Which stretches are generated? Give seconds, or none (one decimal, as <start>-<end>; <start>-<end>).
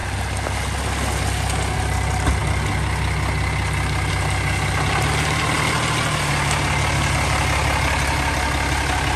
none